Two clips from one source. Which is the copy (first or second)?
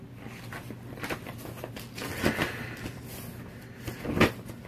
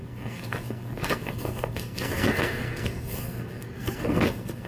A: second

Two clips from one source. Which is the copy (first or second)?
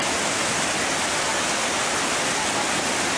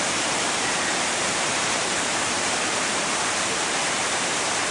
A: second